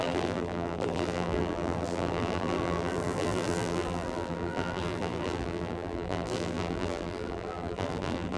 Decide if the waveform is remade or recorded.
remade